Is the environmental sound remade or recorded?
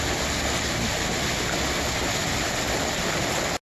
recorded